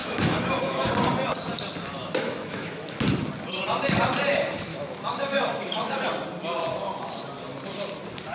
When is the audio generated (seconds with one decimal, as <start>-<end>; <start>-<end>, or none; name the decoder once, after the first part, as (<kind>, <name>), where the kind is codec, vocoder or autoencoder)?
0.0-0.9 (autoencoder, DAC-VAE); 2.0-3.0; 4.7-6.0

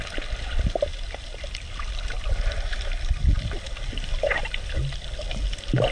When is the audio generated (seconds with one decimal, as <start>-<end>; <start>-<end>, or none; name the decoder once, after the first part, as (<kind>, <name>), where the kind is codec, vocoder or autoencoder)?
none

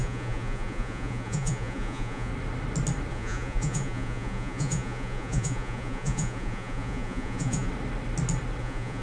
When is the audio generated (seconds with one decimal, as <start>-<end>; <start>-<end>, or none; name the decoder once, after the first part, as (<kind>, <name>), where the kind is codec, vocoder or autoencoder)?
0.0-2.3 (vocoder, Vocos); 3.1-7.7; 8.6-9.0

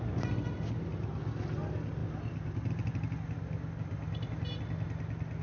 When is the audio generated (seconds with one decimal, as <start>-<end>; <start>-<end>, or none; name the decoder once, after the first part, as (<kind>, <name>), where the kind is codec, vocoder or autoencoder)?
none